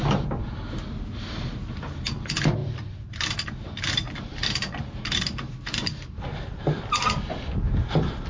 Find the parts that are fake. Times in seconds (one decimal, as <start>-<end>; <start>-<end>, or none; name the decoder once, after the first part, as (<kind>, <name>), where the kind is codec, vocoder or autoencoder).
2.6-6.8 (vocoder, BigVGAN v2)